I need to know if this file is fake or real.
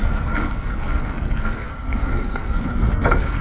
fake